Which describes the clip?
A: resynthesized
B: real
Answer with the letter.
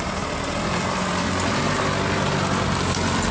B